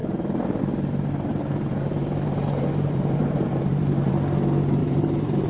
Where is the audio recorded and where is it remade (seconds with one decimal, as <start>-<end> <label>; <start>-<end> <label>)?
0.0-0.6 remade; 0.6-1.3 recorded; 1.3-4.1 remade; 4.1-4.8 recorded; 4.8-5.5 remade

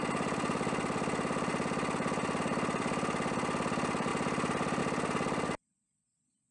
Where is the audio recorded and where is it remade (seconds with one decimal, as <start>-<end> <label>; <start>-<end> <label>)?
0.0-6.5 recorded

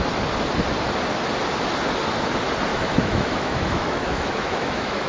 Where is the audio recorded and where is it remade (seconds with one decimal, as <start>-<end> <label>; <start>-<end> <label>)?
0.0-2.7 recorded; 2.7-5.1 remade

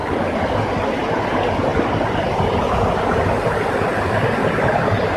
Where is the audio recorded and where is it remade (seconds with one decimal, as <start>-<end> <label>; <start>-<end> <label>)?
0.0-1.7 recorded; 1.7-2.6 remade; 2.6-5.2 recorded

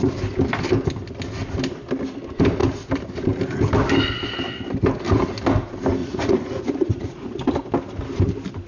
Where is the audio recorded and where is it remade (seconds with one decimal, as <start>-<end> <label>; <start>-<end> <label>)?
0.0-6.0 recorded; 6.0-7.5 remade; 7.5-8.7 recorded

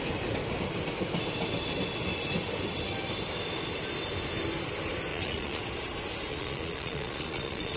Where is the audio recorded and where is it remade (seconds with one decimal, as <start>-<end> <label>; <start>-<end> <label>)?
0.0-5.1 recorded; 5.1-5.6 remade; 5.6-6.3 recorded; 6.3-7.8 remade